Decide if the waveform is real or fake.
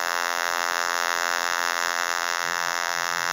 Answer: fake